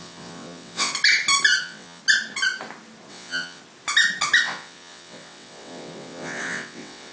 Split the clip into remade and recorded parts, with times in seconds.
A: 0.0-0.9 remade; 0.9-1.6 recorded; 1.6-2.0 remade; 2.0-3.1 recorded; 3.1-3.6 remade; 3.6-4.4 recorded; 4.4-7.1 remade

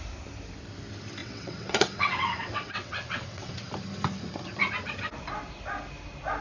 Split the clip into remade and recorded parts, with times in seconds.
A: 0.0-1.2 recorded; 1.2-3.7 remade; 3.7-6.4 recorded

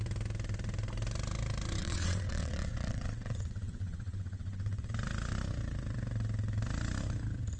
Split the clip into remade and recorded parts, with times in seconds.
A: 0.0-1.8 recorded; 1.8-4.9 remade; 4.9-7.6 recorded